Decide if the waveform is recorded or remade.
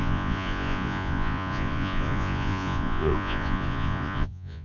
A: remade